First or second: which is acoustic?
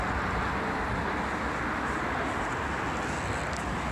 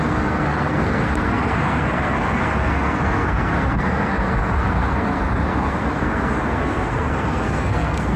first